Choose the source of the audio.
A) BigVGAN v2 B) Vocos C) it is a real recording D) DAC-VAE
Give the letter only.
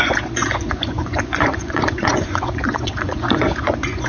B